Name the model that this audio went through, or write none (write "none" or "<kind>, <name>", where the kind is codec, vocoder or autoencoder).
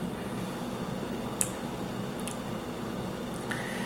none